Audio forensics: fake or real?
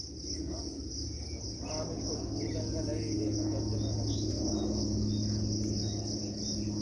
real